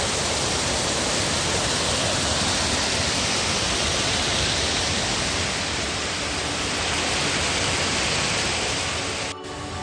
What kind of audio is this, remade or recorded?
recorded